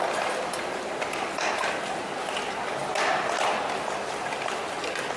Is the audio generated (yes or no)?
no